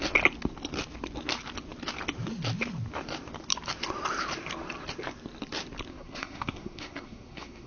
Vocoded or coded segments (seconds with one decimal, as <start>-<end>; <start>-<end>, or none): 5.9-7.7